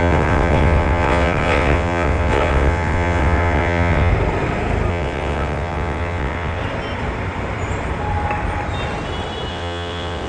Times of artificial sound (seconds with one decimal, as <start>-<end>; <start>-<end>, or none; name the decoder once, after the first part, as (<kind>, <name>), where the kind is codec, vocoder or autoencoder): 0.0-4.1 (vocoder, WaveNeXt); 4.9-6.6; 9.5-10.3